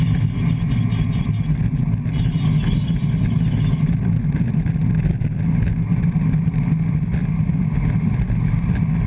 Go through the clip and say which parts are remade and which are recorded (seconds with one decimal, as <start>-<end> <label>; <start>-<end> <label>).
0.0-9.1 recorded

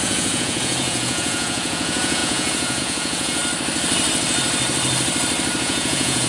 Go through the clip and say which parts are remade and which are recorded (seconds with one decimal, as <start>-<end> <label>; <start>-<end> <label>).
0.0-3.4 remade; 3.4-5.6 recorded; 5.6-6.3 remade